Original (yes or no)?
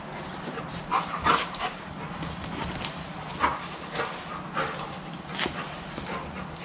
yes